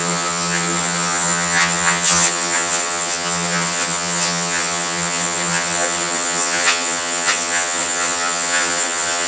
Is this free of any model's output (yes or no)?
no